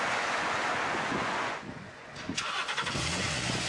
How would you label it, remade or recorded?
remade